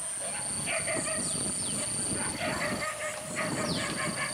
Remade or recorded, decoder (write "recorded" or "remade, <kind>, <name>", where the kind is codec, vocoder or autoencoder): recorded